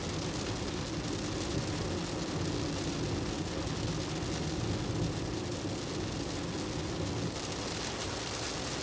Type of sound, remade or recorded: recorded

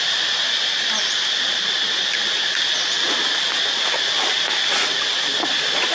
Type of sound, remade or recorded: recorded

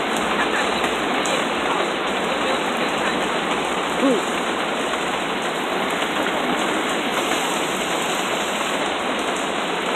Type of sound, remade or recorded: recorded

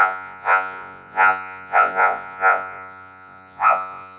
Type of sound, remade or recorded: remade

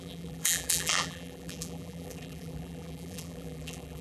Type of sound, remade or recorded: remade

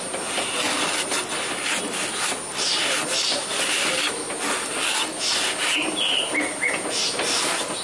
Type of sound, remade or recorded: recorded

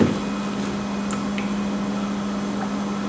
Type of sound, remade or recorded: recorded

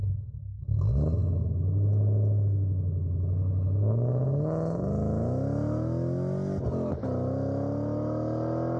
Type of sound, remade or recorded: recorded